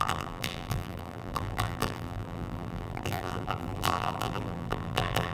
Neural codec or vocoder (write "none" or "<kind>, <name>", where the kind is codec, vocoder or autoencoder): vocoder, BigVGAN v2